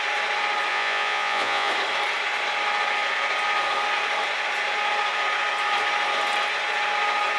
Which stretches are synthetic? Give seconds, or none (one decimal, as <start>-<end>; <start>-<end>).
0.7-1.7